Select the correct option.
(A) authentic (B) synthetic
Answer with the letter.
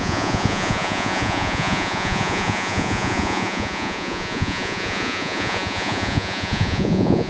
B